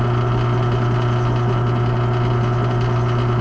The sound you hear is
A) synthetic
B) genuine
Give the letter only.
B